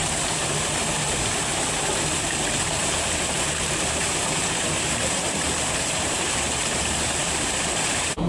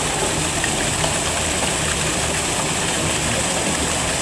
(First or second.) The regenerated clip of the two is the first